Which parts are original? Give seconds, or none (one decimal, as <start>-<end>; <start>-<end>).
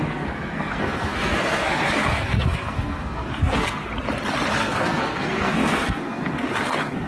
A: 3.9-4.6